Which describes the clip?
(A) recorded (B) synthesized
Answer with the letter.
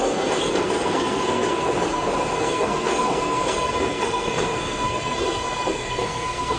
B